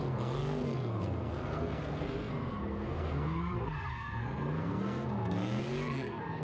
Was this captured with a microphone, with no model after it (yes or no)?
no